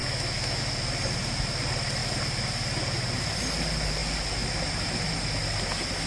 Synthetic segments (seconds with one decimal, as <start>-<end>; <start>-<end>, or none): 0.0-0.6